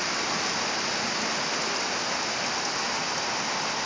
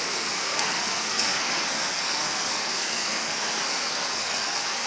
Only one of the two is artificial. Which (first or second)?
second